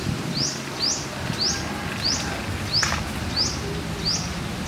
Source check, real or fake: real